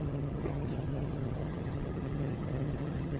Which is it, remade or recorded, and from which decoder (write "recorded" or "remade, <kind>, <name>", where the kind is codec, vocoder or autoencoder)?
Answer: remade, vocoder, HiFi-GAN